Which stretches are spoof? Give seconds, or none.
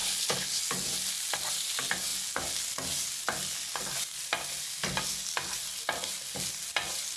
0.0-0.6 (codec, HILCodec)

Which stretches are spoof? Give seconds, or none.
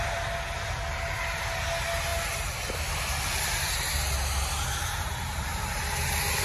none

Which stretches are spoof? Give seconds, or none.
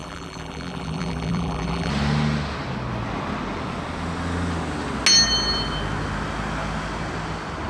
0.0-1.9 (vocoder, BigVGAN v2)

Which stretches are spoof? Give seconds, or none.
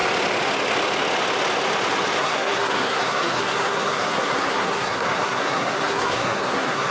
2.2-6.9 (codec, SNAC)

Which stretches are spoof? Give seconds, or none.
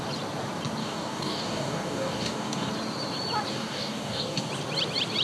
0.8-2.7 (codec, DAC); 3.5-4.5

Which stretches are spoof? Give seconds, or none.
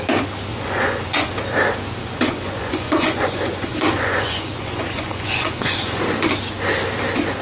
0.5-1.3 (vocoder, Vocos); 2.0-6.0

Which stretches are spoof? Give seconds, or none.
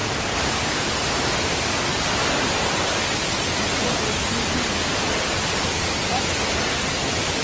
0.0-2.3 (vocoder, BigVGAN v2)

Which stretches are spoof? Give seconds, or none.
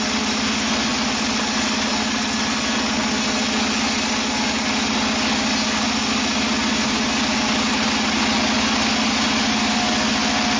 none